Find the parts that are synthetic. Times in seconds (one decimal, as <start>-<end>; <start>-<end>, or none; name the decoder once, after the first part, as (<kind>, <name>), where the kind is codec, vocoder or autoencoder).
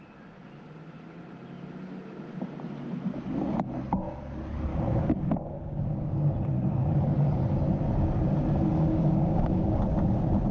4.7-6.1 (codec, DAC); 8.9-9.8